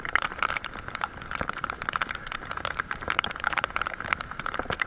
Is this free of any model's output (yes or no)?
no